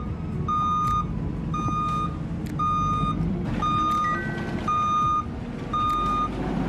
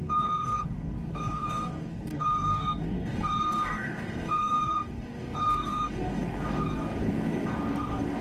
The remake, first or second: second